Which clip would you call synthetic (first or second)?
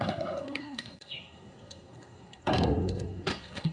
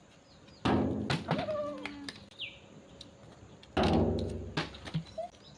first